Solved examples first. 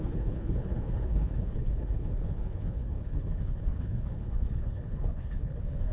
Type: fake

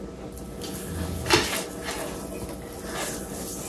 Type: real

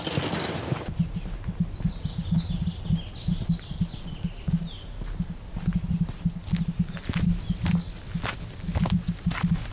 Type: real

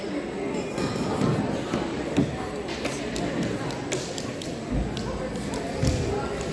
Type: real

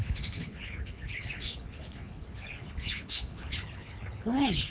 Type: fake